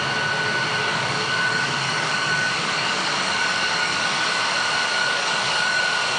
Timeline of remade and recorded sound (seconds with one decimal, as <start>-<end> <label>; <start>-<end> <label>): 0.0-0.8 recorded; 0.8-4.4 remade; 4.4-4.9 recorded; 4.9-5.8 remade; 5.8-6.2 recorded